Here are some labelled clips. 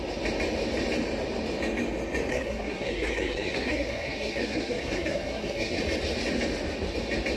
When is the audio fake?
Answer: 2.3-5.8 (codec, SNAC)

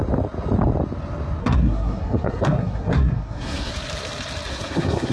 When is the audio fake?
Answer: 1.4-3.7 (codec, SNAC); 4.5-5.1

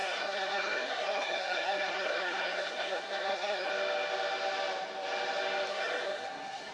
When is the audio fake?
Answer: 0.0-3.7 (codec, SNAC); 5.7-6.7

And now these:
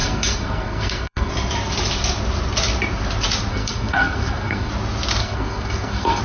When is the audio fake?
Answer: 0.0-1.3 (codec, SNAC); 3.5-4.7; 5.2-6.2

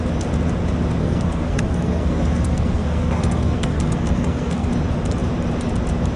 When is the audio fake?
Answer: 1.0-4.7 (codec, SNAC)